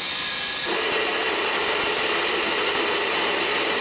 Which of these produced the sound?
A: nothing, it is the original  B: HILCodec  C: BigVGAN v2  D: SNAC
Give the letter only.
A